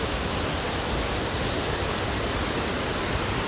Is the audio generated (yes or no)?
no